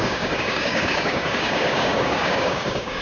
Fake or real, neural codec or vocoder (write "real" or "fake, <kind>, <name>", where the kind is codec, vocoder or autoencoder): fake, codec, DAC